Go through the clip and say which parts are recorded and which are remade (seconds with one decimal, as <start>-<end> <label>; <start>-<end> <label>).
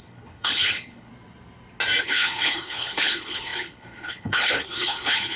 0.0-1.1 remade; 1.1-2.0 recorded; 2.0-5.4 remade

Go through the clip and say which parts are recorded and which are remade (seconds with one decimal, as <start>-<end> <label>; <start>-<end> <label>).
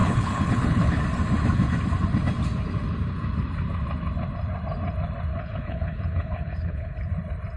0.0-1.0 remade; 1.0-5.3 recorded; 5.3-7.1 remade; 7.1-7.6 recorded